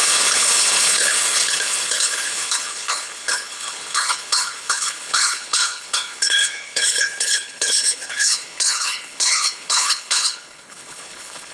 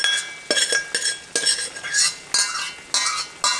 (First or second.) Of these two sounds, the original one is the second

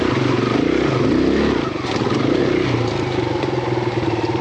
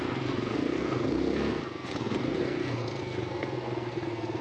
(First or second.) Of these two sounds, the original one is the first